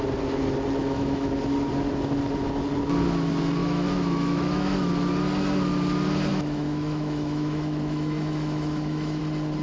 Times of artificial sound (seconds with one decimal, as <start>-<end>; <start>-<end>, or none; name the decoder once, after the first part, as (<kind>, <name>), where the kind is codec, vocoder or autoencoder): 0.8-1.3 (autoencoder, DAC-VAE); 3.6-4.9; 6.3-9.2